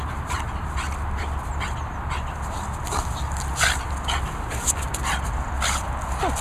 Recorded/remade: recorded